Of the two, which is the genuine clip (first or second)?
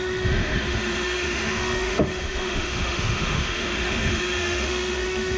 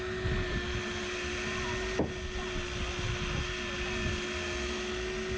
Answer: second